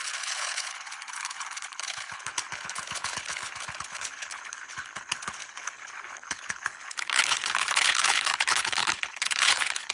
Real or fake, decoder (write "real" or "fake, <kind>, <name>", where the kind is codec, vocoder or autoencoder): fake, codec, HILCodec